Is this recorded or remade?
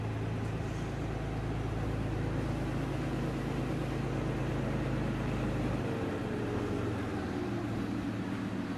recorded